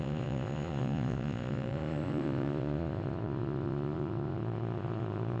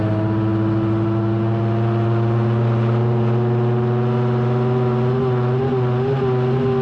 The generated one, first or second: first